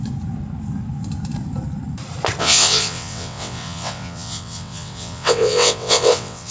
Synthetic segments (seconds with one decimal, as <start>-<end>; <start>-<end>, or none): 2.4-6.5